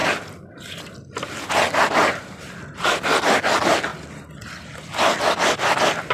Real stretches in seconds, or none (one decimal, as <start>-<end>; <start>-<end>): 0.0-3.9